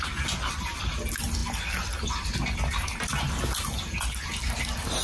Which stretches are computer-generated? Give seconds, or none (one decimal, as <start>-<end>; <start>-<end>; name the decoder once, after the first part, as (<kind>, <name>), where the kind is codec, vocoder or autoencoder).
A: none